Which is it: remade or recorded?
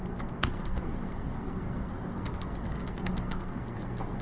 remade